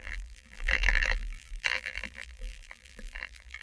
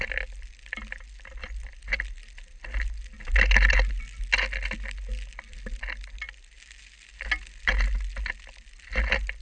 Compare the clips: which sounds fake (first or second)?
first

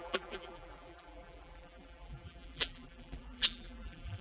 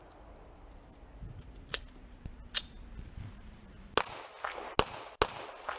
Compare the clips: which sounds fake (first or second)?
first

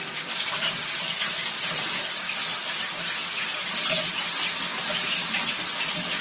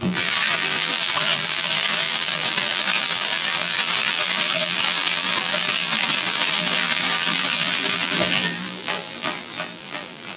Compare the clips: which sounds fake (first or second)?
second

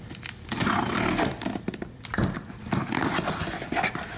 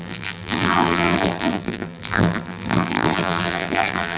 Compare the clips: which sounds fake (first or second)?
second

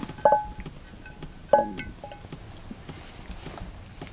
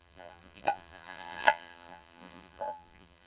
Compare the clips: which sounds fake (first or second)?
second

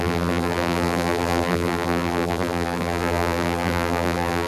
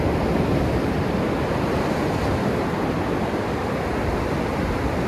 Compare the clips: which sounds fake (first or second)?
first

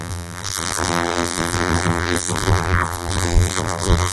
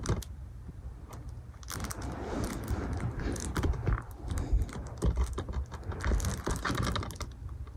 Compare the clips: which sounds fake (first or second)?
first